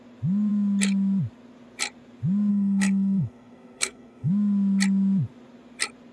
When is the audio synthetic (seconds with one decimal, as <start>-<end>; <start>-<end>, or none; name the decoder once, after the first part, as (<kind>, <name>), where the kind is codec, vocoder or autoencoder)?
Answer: 2.5-4.3 (codec, SNAC)